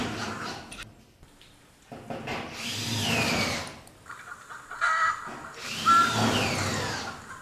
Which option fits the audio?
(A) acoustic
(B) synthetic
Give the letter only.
A